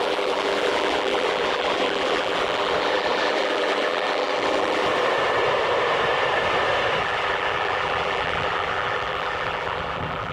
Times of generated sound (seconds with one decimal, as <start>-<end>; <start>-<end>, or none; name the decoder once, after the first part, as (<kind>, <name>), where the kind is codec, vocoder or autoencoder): 0.0-4.9 (vocoder, BigVGAN v2); 7.0-10.3